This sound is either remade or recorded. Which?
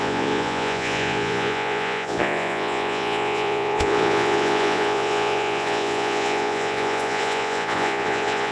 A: remade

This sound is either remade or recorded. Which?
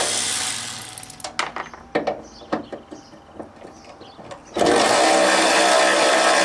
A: recorded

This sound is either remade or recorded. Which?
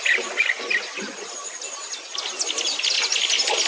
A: recorded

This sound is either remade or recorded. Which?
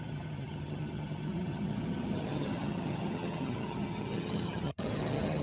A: remade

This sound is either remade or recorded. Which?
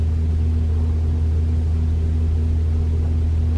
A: recorded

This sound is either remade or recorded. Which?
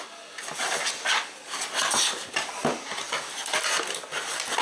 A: recorded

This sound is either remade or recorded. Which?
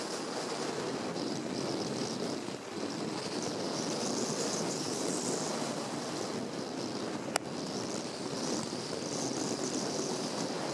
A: recorded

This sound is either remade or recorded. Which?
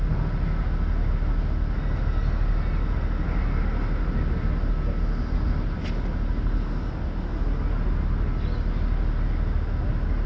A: recorded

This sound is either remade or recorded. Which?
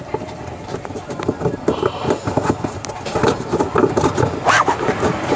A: recorded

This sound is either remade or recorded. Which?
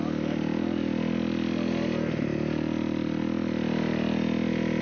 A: recorded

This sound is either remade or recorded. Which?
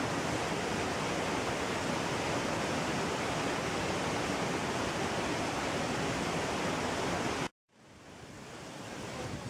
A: recorded